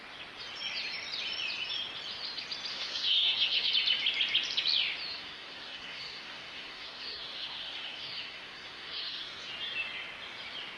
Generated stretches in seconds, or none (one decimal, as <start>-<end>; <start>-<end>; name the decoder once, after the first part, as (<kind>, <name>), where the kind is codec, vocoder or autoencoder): 2.7-3.7 (codec, SNAC); 5.1-9.5